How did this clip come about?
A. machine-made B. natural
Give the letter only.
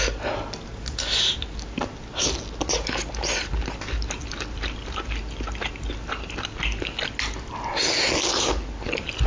B